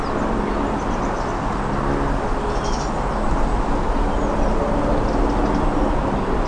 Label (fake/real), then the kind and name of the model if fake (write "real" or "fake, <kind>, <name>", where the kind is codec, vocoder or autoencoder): real